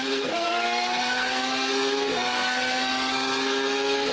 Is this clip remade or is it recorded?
remade